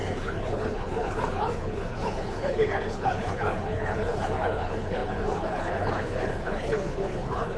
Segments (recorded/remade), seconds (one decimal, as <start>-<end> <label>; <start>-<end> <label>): 0.0-7.6 remade